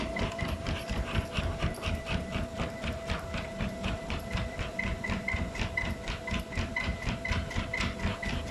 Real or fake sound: fake